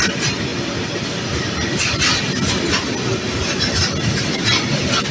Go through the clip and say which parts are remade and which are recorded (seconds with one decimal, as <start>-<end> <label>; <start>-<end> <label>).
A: 0.0-5.1 recorded